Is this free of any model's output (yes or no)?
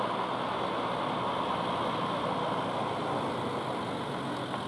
yes